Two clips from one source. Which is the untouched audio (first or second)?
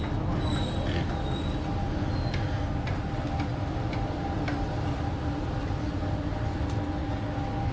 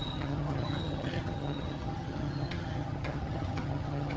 first